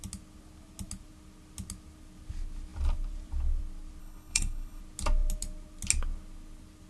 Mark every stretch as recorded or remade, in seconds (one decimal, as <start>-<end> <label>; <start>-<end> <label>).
0.0-4.0 recorded; 4.0-4.8 remade; 4.8-6.9 recorded